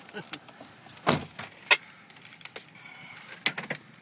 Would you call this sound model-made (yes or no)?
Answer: no